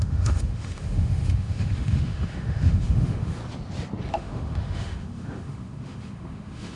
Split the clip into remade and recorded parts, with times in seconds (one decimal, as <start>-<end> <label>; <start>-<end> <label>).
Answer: 0.0-3.4 remade; 3.4-4.1 recorded; 4.1-6.8 remade